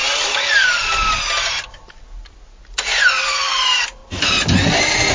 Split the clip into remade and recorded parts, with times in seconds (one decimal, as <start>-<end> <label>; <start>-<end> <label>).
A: 0.0-3.1 recorded; 3.1-4.0 remade; 4.0-5.1 recorded